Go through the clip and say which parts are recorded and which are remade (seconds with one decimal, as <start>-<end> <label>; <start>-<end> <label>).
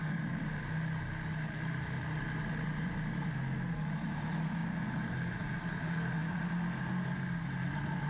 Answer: 0.0-8.1 recorded